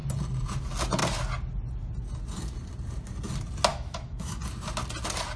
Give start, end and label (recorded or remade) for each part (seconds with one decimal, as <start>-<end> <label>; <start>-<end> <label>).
0.0-3.7 recorded; 3.7-4.4 remade; 4.4-5.4 recorded